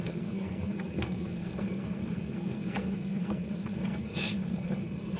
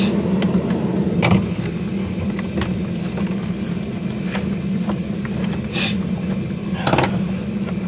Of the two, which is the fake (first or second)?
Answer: first